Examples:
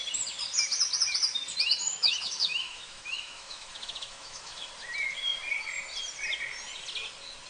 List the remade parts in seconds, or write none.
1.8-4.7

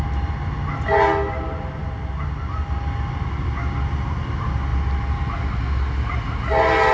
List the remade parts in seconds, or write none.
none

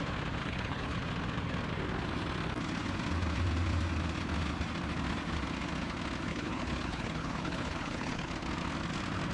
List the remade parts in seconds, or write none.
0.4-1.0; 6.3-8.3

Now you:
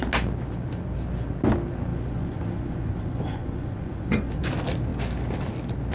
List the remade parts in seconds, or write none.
1.9-4.5

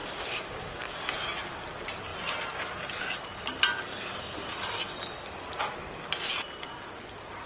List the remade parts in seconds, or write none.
0.0-0.9